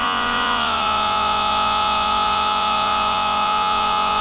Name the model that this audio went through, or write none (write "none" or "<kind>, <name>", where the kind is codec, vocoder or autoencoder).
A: vocoder, Vocos